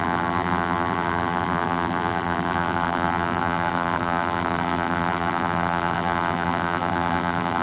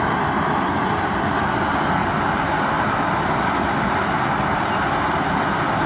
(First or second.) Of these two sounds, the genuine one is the second